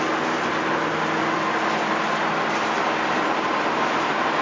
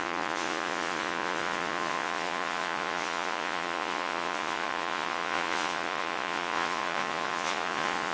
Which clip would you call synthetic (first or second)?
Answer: second